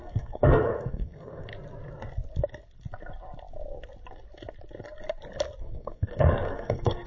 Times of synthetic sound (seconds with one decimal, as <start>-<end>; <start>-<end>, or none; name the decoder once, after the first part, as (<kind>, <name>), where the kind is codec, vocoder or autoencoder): 0.0-1.5 (codec, SNAC); 5.6-7.1